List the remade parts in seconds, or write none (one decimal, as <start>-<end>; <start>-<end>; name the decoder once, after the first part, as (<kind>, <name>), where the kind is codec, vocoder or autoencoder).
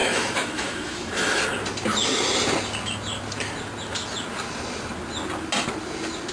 0.0-1.4 (autoencoder, DAC-VAE)